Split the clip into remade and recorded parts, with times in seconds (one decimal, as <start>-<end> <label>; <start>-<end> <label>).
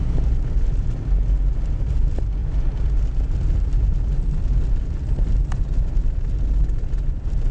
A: 0.0-2.4 recorded; 2.4-5.1 remade; 5.1-7.5 recorded